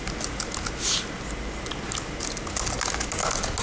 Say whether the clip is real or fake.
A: real